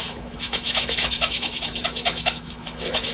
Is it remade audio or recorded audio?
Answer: remade